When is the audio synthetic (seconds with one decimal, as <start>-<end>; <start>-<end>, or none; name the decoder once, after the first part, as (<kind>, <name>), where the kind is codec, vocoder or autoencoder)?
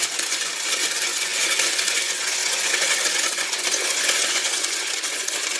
0.0-5.6 (vocoder, Vocos)